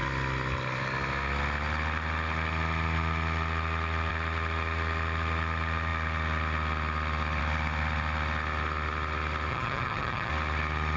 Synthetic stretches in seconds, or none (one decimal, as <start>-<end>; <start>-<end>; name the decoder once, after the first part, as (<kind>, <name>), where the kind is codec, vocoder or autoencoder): 9.5-10.3 (vocoder, HiFi-GAN)